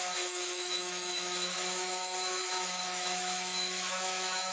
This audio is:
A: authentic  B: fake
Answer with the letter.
B